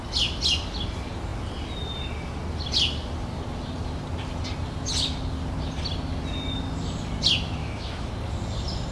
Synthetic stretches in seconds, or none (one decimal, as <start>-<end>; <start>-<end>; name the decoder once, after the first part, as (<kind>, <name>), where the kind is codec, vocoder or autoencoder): 7.6-8.1 (autoencoder, DAC-VAE)